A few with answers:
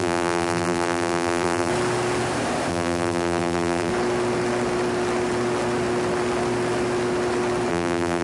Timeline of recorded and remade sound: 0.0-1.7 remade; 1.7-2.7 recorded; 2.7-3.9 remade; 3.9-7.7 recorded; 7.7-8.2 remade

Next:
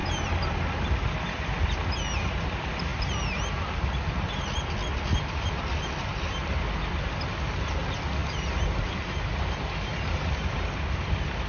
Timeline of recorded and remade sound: 0.0-11.5 recorded

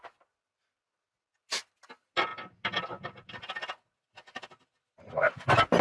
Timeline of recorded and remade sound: 0.0-5.8 recorded

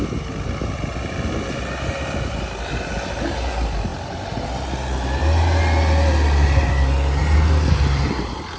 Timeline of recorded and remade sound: 0.0-8.6 recorded

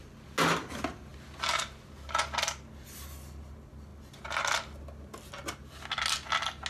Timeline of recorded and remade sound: 0.0-6.7 recorded

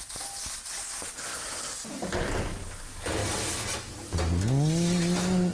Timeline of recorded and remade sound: 0.0-5.5 recorded